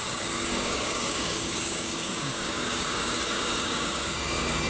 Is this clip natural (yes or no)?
no